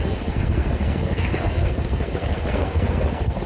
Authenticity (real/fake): fake